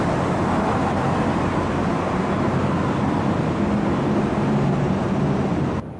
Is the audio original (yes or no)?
yes